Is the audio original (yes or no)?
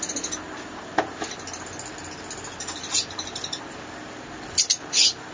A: yes